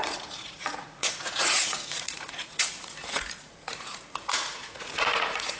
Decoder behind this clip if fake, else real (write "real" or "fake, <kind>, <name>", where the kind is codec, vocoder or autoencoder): fake, vocoder, Vocos